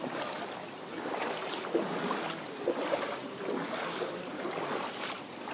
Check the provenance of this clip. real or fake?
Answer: real